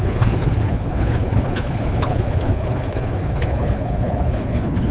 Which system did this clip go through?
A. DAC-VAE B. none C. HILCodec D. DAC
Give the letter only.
C